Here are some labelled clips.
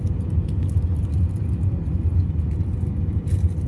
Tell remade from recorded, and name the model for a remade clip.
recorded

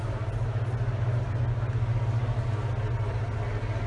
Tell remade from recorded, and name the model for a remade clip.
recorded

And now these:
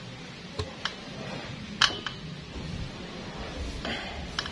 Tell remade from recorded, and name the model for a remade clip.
recorded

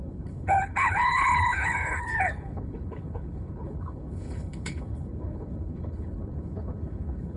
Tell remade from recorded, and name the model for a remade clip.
remade, codec, HILCodec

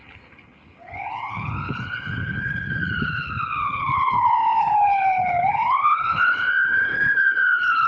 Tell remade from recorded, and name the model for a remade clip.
remade, codec, HILCodec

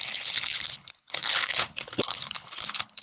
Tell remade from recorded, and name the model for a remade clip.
remade, codec, HILCodec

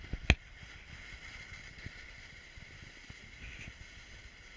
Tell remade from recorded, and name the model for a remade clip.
recorded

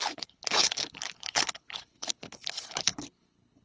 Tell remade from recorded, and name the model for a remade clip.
remade, codec, HILCodec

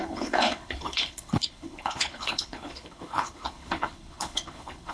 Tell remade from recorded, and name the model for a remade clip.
remade, codec, HILCodec